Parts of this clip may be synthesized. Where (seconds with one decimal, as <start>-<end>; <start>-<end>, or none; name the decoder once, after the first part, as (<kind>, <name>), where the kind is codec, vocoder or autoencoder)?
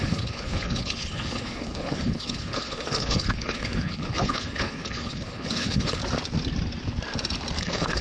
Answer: 0.0-6.0 (codec, HILCodec); 7.6-8.0